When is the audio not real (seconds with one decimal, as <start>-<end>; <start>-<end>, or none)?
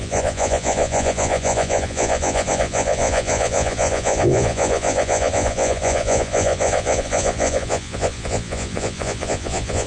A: 0.0-9.9